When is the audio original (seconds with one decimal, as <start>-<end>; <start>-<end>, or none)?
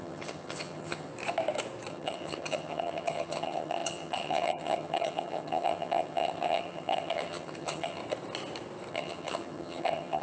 1.1-1.9; 8.0-8.9